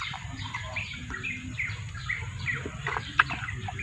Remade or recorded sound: remade